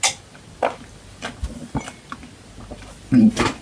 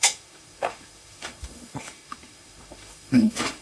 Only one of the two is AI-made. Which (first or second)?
second